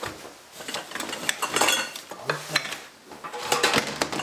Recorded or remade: recorded